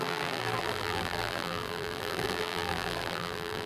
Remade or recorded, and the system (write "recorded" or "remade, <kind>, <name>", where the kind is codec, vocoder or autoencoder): remade, vocoder, BigVGAN v2